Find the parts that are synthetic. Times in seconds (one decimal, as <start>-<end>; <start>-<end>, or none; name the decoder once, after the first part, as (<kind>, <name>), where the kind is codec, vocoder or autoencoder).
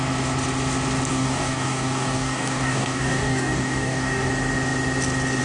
1.1-4.3 (codec, DAC)